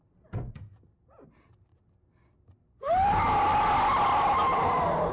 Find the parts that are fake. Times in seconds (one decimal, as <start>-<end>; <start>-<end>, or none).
none